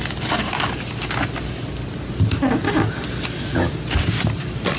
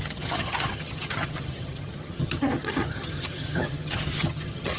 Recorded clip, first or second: first